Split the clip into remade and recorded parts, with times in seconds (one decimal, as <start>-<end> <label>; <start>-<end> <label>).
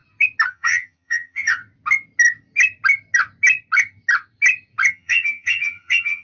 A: 0.0-0.5 recorded; 0.5-1.6 remade; 1.6-4.9 recorded; 4.9-6.2 remade